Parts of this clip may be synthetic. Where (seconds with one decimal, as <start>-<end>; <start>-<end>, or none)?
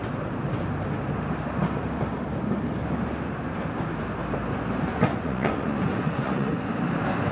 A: 4.9-6.7